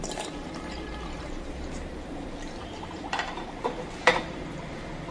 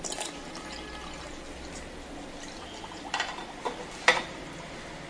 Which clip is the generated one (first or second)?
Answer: first